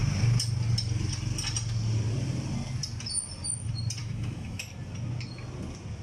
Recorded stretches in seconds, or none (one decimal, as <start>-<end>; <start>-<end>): 0.0-4.0; 4.6-6.0